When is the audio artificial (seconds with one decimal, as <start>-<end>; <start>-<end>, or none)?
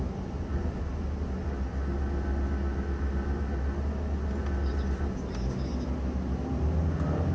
none